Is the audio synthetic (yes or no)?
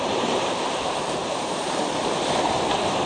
yes